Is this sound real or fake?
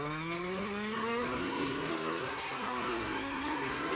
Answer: fake